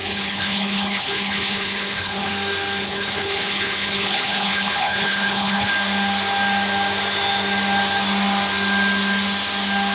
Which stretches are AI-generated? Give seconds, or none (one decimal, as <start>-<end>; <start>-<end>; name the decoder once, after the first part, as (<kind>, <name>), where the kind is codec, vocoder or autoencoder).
0.0-2.3 (codec, HILCodec); 2.8-5.7